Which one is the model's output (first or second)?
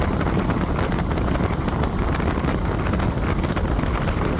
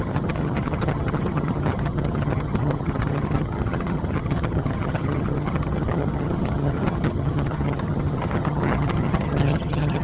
second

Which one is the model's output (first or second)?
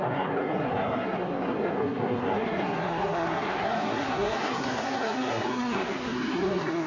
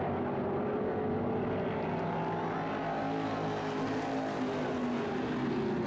first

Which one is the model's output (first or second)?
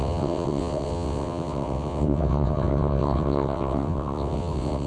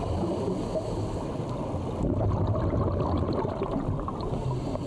first